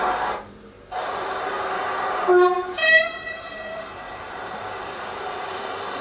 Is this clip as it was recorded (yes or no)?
no